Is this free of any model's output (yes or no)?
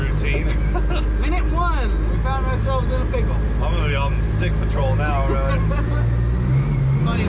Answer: yes